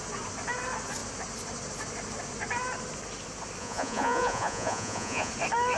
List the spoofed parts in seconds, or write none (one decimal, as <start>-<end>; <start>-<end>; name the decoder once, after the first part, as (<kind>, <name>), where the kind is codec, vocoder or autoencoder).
3.6-5.3 (vocoder, Vocos)